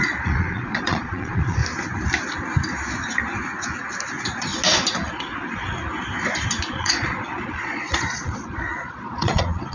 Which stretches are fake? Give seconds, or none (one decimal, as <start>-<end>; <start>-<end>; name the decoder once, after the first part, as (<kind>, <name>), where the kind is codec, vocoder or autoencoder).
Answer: 0.0-1.6 (vocoder, Vocos); 4.1-4.5; 5.1-5.8; 6.7-9.7